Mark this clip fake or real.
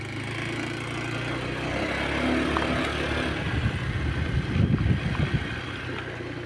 real